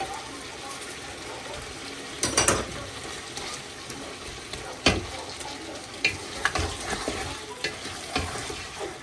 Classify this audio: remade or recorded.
recorded